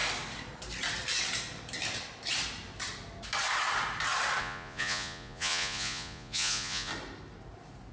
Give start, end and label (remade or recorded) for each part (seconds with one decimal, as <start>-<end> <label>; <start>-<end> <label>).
0.0-4.4 recorded; 4.4-6.9 remade; 6.9-7.9 recorded